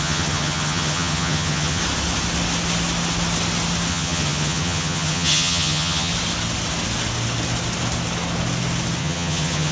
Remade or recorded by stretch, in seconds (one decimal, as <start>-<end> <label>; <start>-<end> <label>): 0.0-1.8 remade; 1.8-3.9 recorded; 3.9-6.1 remade; 6.1-9.0 recorded; 9.0-9.7 remade